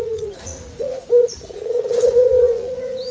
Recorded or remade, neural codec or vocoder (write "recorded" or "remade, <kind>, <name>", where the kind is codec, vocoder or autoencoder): remade, vocoder, Vocos